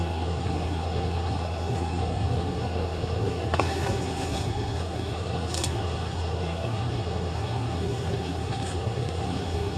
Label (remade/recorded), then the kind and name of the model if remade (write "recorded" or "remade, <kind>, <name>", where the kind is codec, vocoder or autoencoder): remade, codec, SNAC